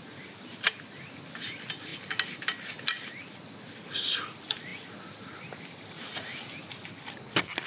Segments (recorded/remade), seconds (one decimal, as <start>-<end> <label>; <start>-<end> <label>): 0.0-1.9 remade; 1.9-4.2 recorded; 4.2-7.7 remade